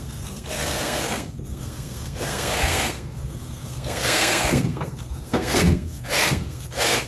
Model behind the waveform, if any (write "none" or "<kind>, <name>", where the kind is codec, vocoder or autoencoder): codec, SNAC